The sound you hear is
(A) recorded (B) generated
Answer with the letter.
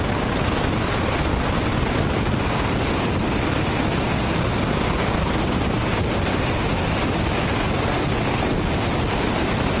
A